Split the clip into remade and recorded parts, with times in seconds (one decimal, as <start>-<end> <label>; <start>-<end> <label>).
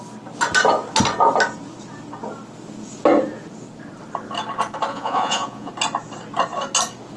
0.0-4.9 recorded; 4.9-5.7 remade; 5.7-7.2 recorded